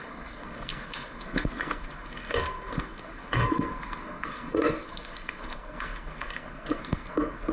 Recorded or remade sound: remade